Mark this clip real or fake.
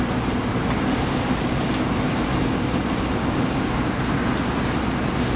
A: real